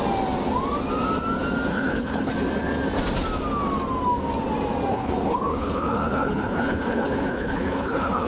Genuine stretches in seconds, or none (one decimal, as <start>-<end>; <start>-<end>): 0.0-1.7; 2.3-4.9